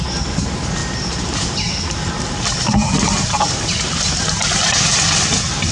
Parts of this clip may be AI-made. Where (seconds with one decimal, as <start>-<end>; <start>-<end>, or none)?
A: none